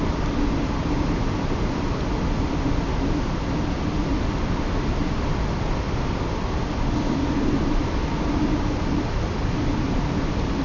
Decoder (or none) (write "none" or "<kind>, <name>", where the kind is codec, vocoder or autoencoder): none